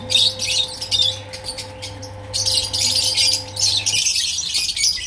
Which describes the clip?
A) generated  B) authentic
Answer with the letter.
B